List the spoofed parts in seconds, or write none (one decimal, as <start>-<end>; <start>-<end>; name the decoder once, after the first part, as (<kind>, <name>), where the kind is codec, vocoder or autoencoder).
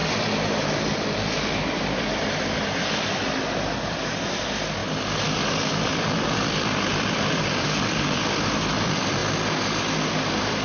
0.0-4.8 (vocoder, BigVGAN v2); 5.7-9.2; 9.8-10.6